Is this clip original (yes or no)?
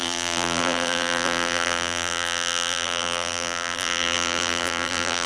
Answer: no